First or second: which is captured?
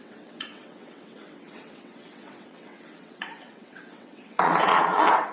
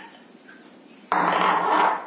second